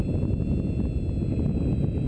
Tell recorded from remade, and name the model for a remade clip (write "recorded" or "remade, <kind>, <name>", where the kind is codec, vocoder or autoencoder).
recorded